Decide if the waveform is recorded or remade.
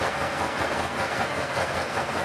remade